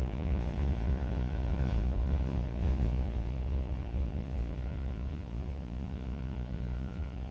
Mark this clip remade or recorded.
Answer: remade